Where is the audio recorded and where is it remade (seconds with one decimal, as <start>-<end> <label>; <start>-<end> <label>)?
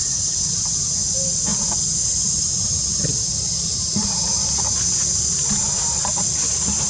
0.0-1.1 recorded; 1.1-6.9 remade